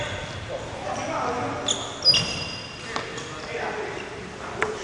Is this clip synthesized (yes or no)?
no